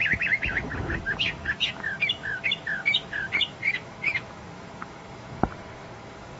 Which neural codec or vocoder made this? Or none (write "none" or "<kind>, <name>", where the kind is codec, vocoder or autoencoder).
autoencoder, DAC-VAE